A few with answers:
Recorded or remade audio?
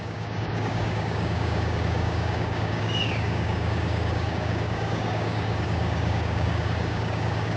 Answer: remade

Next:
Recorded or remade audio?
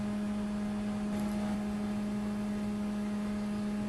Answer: recorded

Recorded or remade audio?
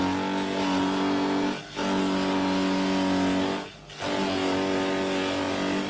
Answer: recorded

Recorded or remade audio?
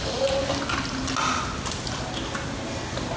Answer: recorded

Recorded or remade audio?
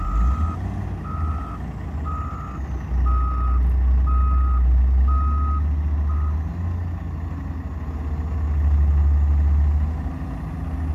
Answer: recorded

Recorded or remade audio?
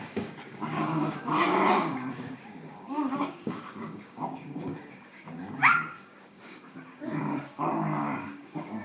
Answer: remade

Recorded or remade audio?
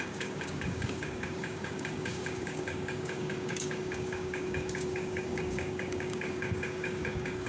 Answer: remade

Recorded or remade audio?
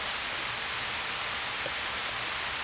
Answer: recorded